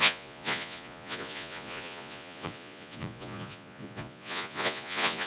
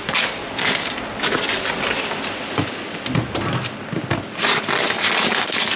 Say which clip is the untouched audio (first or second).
second